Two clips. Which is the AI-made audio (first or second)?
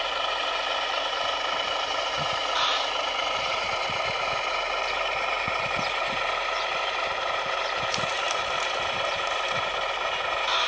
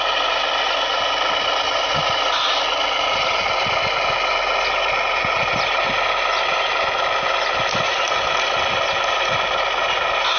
first